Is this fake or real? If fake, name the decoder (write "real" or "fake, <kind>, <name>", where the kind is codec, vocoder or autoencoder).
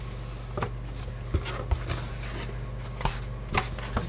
real